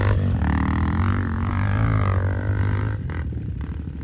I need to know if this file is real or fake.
real